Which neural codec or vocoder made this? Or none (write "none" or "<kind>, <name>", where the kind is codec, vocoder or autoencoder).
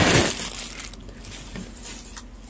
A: none